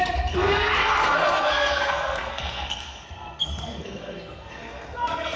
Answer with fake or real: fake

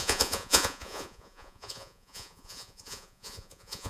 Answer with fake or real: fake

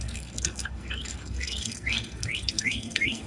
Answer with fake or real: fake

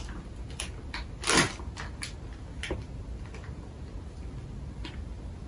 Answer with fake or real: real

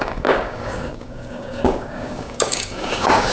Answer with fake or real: fake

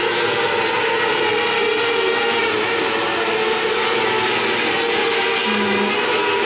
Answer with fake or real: real